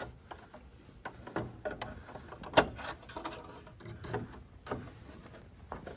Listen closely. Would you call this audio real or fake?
real